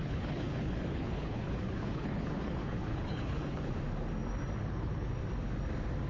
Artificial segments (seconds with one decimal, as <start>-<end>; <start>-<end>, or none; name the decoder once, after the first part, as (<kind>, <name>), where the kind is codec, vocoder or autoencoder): 0.0-3.7 (codec, HILCodec); 4.6-5.1